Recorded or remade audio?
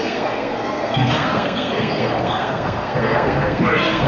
remade